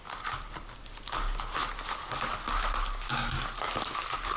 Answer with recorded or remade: recorded